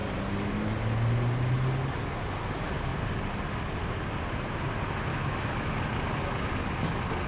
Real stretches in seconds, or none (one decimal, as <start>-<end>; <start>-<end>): 0.0-5.1; 5.8-7.3